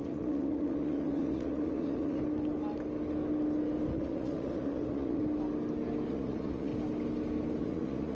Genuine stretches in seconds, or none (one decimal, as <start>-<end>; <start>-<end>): 2.2-3.9; 5.2-6.1; 6.7-7.6